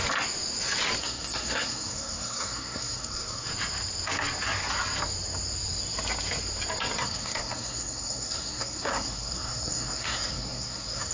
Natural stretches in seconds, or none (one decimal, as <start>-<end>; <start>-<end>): 0.0-1.0; 3.5-7.0